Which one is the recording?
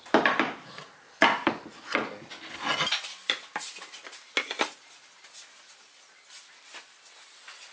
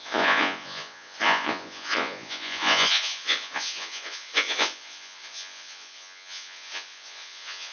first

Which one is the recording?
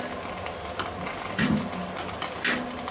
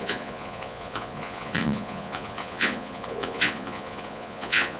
first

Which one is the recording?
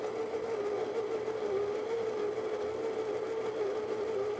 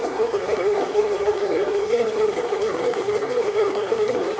first